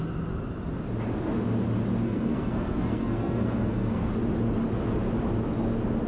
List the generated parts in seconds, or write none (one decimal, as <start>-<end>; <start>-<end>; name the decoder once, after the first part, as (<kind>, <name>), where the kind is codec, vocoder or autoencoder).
2.0-4.1 (codec, SNAC)